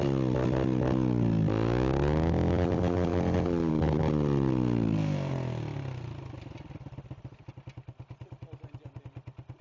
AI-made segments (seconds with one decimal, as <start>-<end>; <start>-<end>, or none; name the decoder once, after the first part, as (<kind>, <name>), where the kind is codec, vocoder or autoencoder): none